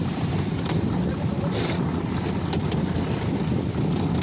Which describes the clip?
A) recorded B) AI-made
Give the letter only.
B